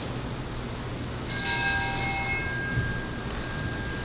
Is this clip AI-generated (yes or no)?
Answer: no